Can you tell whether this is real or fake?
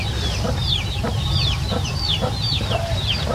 real